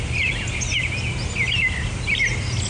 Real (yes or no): yes